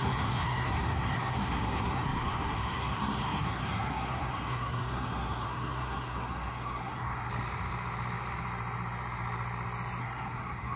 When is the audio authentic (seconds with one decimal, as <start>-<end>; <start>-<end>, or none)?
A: 7.3-10.0